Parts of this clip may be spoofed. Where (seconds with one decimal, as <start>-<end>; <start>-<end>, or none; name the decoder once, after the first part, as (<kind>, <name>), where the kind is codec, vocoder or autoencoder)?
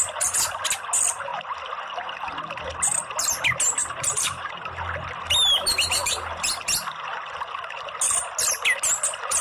3.8-4.6 (vocoder, BigVGAN v2); 6.0-6.6